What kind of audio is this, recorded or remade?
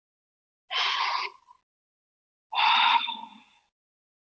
recorded